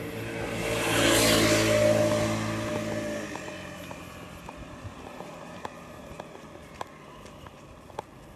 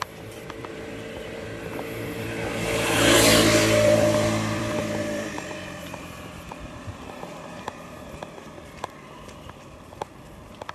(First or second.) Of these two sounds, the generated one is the second